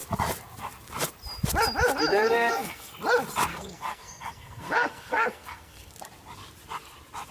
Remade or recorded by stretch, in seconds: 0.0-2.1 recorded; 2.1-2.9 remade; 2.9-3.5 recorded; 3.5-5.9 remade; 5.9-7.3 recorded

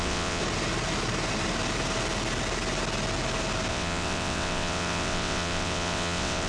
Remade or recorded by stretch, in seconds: 0.0-0.4 remade; 0.4-3.7 recorded; 3.7-6.5 remade

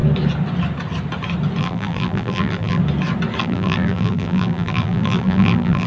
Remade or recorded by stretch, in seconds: 0.0-1.6 recorded; 1.6-2.8 remade; 2.8-3.4 recorded; 3.4-5.9 remade

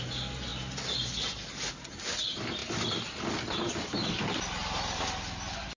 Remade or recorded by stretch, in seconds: 0.0-5.8 recorded

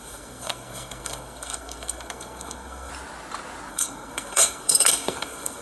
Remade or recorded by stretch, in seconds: 0.0-2.9 remade; 2.9-3.7 recorded; 3.7-5.6 remade